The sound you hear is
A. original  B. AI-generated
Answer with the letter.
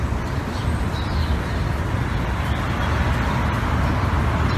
A